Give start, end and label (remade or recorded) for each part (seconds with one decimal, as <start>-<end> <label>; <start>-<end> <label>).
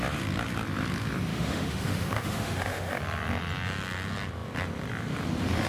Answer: 0.0-1.3 recorded; 1.3-3.0 remade; 3.0-5.7 recorded